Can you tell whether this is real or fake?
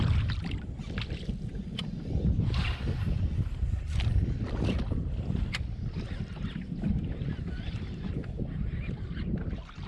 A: real